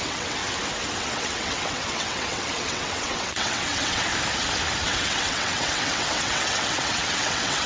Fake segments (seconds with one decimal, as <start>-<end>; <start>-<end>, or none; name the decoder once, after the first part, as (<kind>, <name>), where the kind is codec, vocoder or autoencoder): 0.0-0.4 (vocoder, WaveNeXt); 1.0-4.1; 4.8-7.7

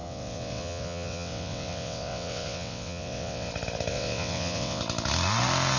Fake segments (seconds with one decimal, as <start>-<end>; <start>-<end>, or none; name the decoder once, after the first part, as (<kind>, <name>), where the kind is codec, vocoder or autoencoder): 0.0-3.5 (vocoder, WaveNeXt); 3.9-4.8

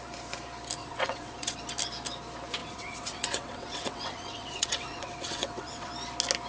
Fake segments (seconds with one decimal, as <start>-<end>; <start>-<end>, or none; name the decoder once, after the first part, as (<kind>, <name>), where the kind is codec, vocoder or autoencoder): 0.8-1.6 (vocoder, WaveNeXt); 2.6-5.9

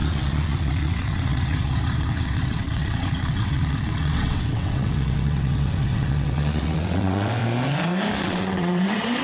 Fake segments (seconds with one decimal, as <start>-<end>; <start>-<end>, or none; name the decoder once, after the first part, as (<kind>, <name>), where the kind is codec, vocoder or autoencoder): 0.0-7.4 (vocoder, WaveNeXt); 8.2-9.2